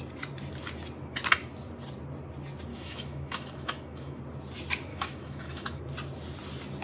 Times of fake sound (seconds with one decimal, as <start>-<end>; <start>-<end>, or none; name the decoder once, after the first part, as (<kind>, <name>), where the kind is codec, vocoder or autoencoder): 2.7-4.2 (autoencoder, DAC-VAE); 4.9-5.8